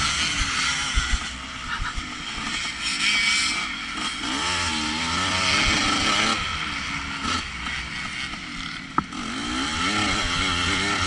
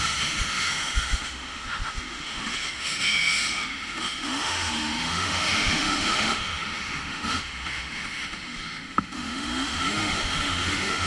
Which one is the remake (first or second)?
second